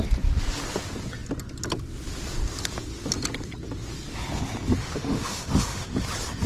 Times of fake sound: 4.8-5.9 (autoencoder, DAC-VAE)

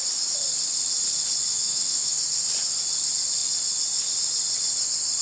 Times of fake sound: 1.5-2.2 (autoencoder, DAC-VAE)

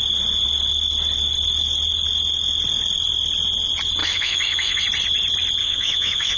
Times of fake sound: 4.0-4.8 (autoencoder, DAC-VAE); 5.6-6.4

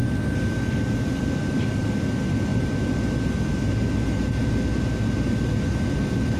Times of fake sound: none

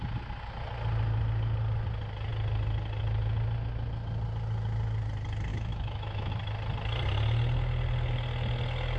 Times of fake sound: 5.5-6.3 (autoencoder, DAC-VAE)

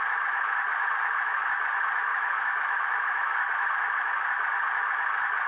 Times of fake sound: 2.1-3.5 (autoencoder, DAC-VAE)

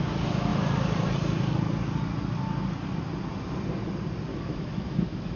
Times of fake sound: 4.3-5.4 (autoencoder, DAC-VAE)